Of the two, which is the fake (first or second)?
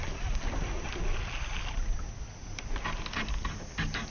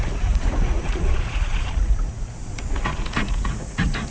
second